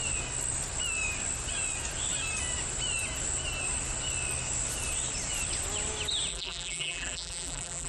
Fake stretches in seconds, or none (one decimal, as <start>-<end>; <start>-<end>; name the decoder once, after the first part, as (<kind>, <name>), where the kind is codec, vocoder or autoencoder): 6.3-7.9 (vocoder, BigVGAN v2)